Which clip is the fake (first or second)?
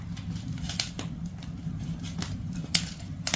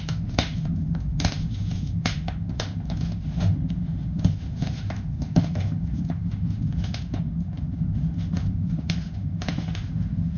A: second